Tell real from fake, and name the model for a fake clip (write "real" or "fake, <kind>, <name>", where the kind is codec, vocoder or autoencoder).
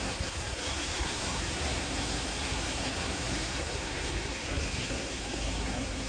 fake, codec, SNAC